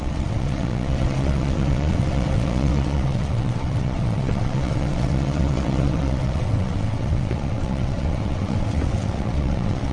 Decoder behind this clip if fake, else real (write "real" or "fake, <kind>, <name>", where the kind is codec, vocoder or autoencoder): fake, vocoder, WaveNeXt